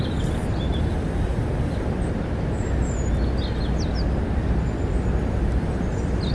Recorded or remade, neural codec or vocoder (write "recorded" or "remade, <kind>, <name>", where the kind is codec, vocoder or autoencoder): recorded